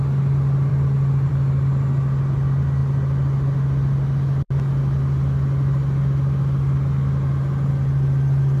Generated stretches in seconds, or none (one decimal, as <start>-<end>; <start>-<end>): none